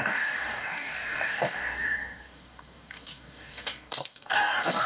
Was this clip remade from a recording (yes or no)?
yes